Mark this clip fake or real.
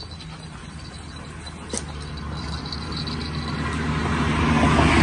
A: real